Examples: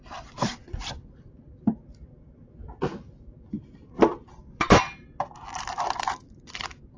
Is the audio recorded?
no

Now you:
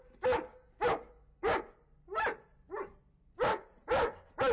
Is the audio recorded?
yes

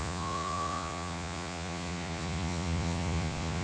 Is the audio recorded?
no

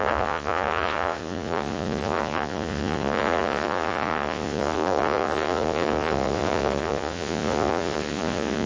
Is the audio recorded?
no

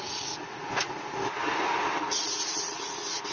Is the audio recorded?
no